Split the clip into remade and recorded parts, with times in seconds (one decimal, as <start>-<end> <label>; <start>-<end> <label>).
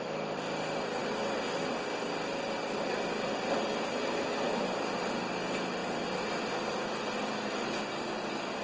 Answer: 0.0-8.6 recorded